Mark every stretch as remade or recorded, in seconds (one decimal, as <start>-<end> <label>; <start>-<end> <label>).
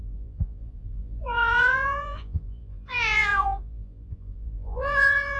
0.0-5.4 remade